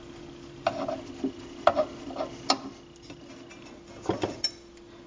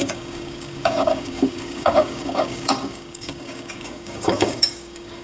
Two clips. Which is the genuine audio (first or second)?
first